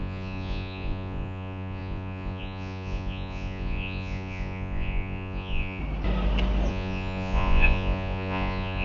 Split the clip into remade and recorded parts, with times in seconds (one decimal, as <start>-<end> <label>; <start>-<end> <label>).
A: 0.0-5.8 remade; 5.8-6.7 recorded; 6.7-8.8 remade